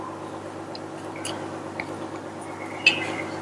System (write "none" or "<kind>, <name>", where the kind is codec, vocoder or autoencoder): none